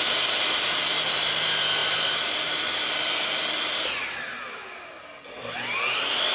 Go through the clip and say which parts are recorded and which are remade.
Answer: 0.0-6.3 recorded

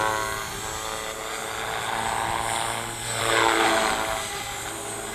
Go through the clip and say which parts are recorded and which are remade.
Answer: 0.0-5.1 recorded

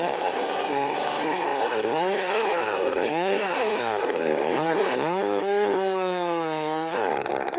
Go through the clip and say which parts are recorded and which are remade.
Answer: 0.0-7.6 remade

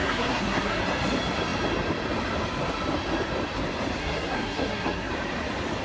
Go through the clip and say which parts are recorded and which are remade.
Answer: 0.0-0.8 remade; 0.8-4.0 recorded; 4.0-5.1 remade; 5.1-5.8 recorded

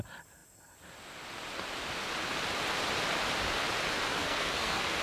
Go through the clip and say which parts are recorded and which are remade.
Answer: 0.0-4.1 recorded; 4.1-5.0 remade

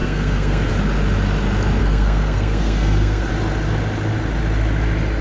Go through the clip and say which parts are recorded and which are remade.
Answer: 0.0-0.7 remade; 0.7-1.8 recorded; 1.8-3.3 remade; 3.3-5.2 recorded

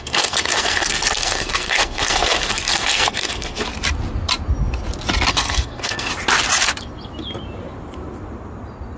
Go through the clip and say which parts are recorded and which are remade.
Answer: 0.0-3.7 remade; 3.7-5.3 recorded; 5.3-6.1 remade; 6.1-9.0 recorded